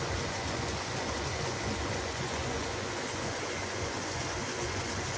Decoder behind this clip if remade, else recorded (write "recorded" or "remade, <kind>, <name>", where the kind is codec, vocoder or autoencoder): remade, vocoder, Vocos